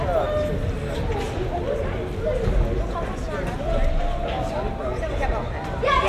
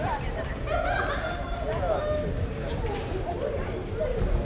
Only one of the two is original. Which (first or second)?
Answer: first